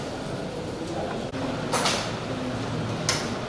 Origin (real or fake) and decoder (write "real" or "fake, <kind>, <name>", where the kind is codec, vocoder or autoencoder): real